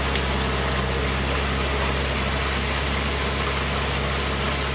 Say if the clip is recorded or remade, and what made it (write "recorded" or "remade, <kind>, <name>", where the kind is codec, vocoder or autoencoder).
recorded